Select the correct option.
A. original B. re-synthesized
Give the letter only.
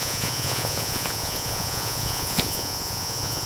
B